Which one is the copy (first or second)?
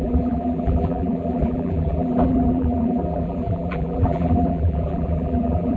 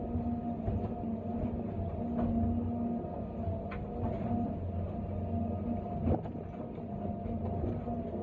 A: first